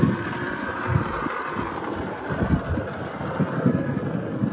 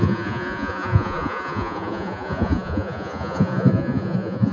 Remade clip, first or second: second